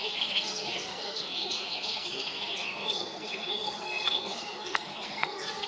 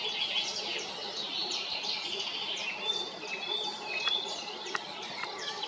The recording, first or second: second